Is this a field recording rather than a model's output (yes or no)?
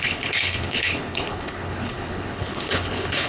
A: no